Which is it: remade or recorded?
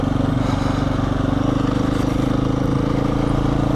recorded